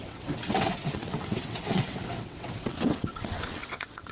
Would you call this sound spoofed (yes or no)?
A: yes